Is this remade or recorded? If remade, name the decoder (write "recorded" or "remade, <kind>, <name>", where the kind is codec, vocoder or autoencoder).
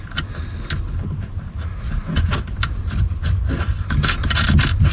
recorded